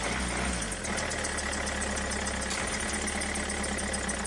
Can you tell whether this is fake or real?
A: real